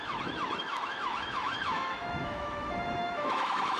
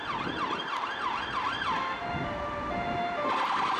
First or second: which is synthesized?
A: first